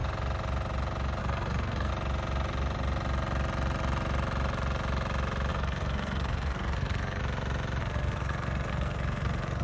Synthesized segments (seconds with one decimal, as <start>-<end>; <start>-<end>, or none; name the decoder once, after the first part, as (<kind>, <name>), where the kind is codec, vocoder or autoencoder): 1.2-1.9 (codec, SNAC); 5.5-7.2; 7.8-9.6